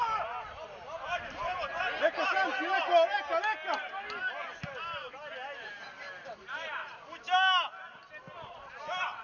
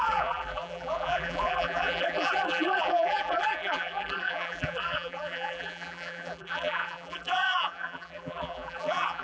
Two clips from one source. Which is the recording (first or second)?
first